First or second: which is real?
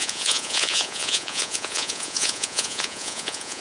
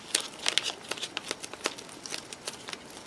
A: second